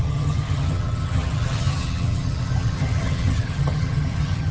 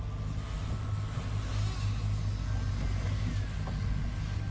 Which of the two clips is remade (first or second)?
first